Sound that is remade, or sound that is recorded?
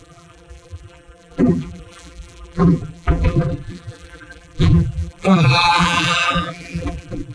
remade